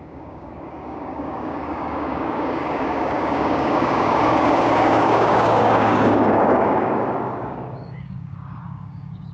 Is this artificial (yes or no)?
yes